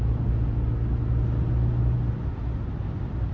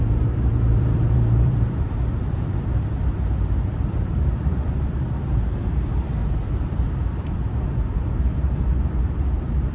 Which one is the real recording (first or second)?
first